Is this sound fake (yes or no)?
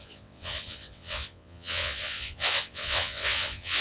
yes